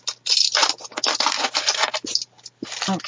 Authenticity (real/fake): real